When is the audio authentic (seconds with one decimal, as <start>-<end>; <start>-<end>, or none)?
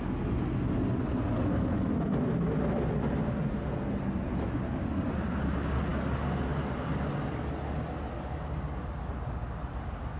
0.0-10.2